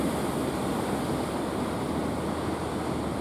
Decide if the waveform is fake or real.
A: real